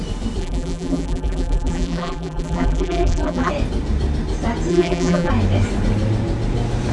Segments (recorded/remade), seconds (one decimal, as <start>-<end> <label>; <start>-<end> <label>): 0.0-0.4 recorded; 0.4-3.5 remade; 3.5-4.7 recorded; 4.7-5.3 remade; 5.3-6.9 recorded